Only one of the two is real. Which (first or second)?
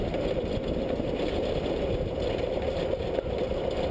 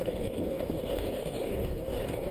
first